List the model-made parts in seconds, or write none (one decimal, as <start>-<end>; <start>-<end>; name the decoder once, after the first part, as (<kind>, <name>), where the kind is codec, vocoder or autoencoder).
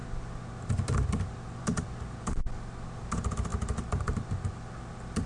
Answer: none